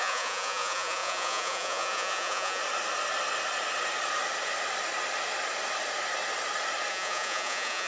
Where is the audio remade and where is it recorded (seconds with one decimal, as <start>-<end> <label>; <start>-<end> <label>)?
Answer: 0.0-2.6 remade; 2.6-6.9 recorded; 6.9-7.9 remade